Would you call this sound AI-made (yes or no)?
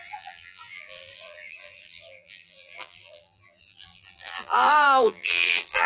yes